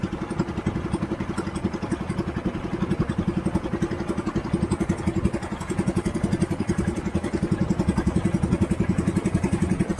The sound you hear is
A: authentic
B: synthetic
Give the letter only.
A